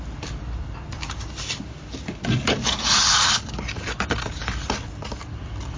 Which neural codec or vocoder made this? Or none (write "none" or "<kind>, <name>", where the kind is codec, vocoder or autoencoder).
none